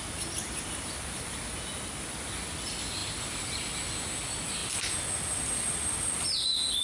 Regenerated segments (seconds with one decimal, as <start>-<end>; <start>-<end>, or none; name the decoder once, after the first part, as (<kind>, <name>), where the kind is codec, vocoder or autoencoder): none